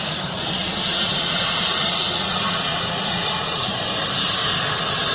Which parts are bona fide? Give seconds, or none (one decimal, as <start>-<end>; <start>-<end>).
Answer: 0.0-0.6; 3.7-5.1